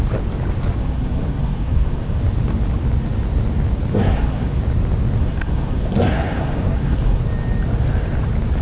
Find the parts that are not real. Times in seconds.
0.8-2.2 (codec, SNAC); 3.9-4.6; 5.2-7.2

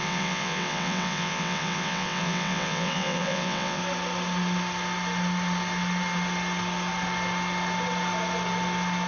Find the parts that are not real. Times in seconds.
0.0-3.8 (vocoder, WaveNeXt)

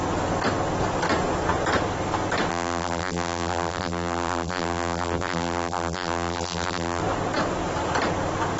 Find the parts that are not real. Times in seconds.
2.5-7.0 (vocoder, BigVGAN v2)

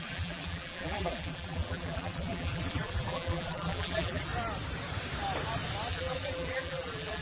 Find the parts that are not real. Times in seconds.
0.0-4.3 (vocoder, BigVGAN v2); 5.9-7.2